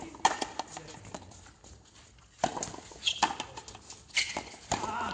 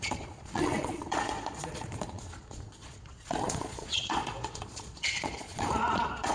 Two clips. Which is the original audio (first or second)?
first